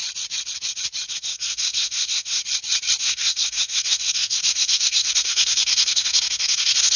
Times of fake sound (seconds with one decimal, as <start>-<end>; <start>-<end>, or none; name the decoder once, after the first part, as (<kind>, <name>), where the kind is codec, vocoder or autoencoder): 1.1-2.4 (codec, SNAC); 3.0-7.0